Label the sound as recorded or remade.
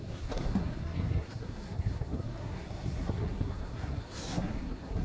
remade